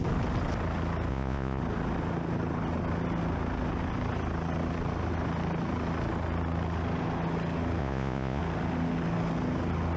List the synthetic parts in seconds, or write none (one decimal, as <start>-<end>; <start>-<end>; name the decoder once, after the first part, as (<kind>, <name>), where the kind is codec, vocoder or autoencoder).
1.1-1.6 (vocoder, Vocos); 7.8-8.4